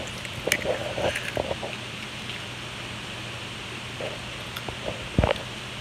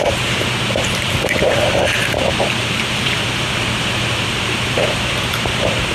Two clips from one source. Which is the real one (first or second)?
first